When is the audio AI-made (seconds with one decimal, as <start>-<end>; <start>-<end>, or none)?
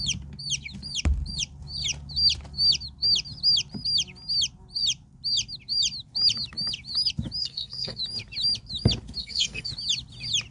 7.4-8.0; 9.2-9.7